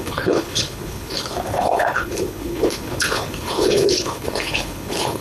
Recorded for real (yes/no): no